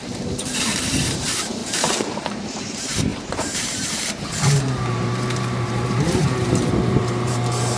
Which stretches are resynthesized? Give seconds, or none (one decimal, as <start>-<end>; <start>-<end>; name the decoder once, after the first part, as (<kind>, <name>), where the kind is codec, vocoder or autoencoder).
0.0-7.8 (vocoder, BigVGAN v2)